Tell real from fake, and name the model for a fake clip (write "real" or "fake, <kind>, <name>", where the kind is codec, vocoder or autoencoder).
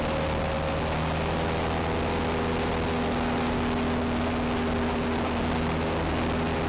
real